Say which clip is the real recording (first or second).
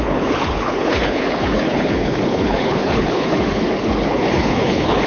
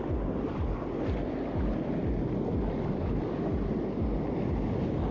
second